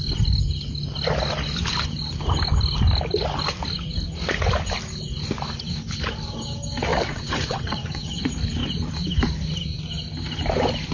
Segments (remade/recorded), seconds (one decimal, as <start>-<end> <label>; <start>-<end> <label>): 0.0-6.9 recorded; 6.9-8.2 remade; 8.2-10.9 recorded